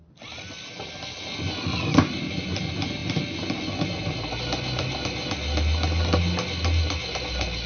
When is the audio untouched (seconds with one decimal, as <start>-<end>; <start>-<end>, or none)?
0.0-7.7